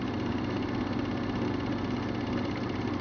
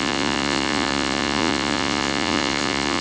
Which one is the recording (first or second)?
first